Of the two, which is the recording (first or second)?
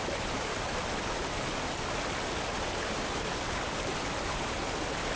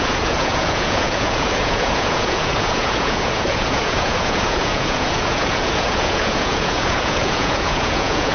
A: first